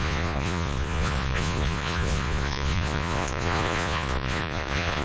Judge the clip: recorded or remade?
remade